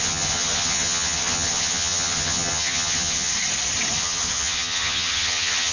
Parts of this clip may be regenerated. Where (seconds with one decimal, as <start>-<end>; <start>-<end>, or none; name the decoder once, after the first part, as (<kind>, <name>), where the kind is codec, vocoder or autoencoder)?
0.0-3.3 (vocoder, HiFi-GAN); 4.0-5.7